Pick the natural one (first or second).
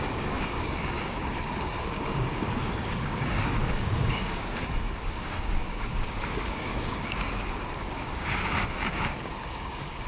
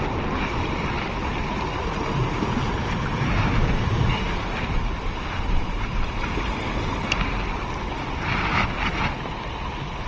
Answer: second